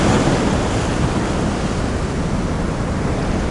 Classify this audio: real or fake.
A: real